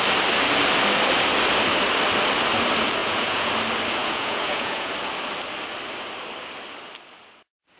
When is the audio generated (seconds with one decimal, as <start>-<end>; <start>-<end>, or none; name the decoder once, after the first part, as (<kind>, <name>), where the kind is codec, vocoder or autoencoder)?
3.0-3.5 (vocoder, Vocos); 4.0-4.9

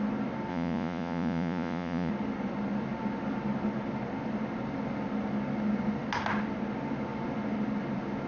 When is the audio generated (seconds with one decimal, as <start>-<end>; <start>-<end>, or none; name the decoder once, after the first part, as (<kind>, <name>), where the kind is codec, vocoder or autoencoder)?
0.5-2.1 (vocoder, Vocos)

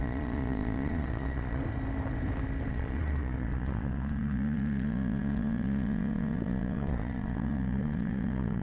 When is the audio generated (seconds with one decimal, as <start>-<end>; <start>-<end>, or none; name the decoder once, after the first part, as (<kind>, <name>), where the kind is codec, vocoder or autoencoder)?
0.0-1.6 (vocoder, Vocos); 2.7-8.6

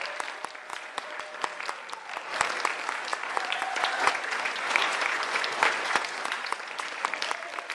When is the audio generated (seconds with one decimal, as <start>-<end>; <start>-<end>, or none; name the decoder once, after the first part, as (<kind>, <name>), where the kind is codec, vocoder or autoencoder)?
0.7-1.2 (vocoder, Vocos); 3.1-7.0

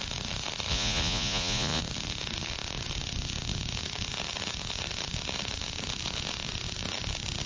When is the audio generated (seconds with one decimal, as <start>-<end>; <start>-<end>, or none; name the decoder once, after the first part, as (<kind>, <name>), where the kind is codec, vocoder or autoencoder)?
0.7-1.8 (vocoder, Vocos)

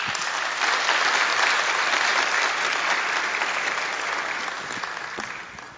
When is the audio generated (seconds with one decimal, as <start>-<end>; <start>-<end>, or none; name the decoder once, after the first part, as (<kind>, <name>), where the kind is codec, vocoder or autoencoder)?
none

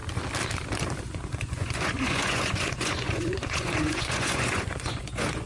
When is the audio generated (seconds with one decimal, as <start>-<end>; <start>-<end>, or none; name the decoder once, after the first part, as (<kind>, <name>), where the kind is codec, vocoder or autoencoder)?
1.0-5.5 (vocoder, Vocos)

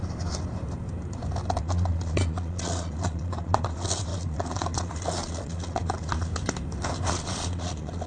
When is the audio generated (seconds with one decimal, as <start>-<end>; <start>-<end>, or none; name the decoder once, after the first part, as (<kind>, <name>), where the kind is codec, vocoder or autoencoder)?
1.6-6.3 (vocoder, Vocos); 7.1-8.1